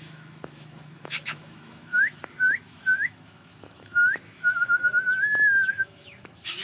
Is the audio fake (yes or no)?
yes